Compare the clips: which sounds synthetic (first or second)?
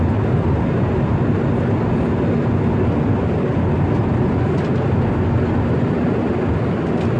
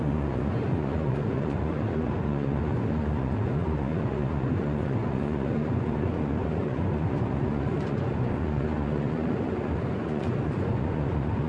second